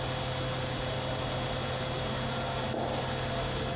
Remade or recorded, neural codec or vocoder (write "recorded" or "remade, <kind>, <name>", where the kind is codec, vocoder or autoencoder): recorded